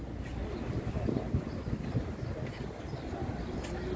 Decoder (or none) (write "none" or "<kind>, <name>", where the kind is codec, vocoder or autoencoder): none